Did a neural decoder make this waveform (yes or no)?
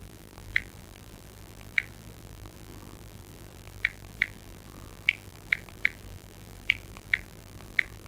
yes